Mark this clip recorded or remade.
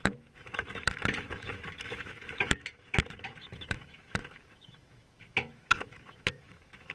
remade